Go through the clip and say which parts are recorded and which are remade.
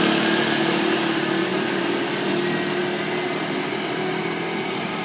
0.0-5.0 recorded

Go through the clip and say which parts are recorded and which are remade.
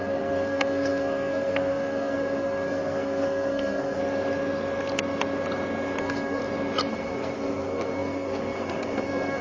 0.0-4.0 remade; 4.0-6.0 recorded; 6.0-6.4 remade; 6.4-6.9 recorded; 6.9-9.4 remade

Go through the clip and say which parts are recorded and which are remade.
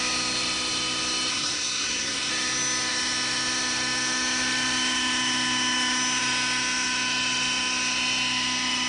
0.0-1.3 recorded; 1.3-2.3 remade; 2.3-8.9 recorded